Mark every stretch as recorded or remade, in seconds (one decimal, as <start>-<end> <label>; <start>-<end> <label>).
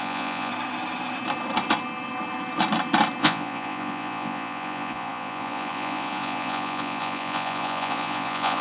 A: 0.0-0.5 remade; 0.5-3.2 recorded; 3.2-8.6 remade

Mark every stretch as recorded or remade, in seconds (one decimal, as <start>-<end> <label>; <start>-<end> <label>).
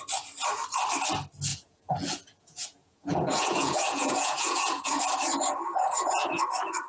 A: 0.0-1.5 recorded; 1.5-5.0 remade; 5.0-5.7 recorded; 5.7-6.4 remade; 6.4-6.9 recorded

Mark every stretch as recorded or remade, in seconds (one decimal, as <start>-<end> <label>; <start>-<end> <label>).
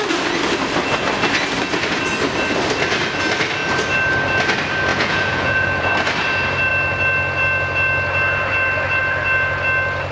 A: 0.0-4.9 recorded; 4.9-5.9 remade; 5.9-10.1 recorded